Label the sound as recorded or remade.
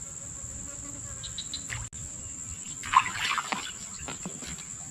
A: recorded